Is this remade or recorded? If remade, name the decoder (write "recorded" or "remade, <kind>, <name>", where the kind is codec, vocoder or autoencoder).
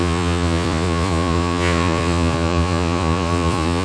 remade, vocoder, Vocos